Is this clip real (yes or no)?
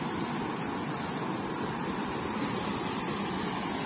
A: yes